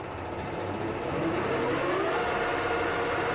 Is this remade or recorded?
recorded